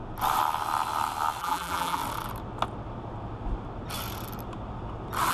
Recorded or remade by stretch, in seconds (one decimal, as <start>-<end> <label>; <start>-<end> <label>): 0.0-1.4 recorded; 1.4-2.0 remade; 2.0-5.3 recorded